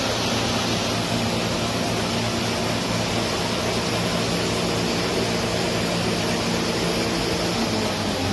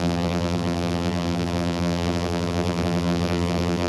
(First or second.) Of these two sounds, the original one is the first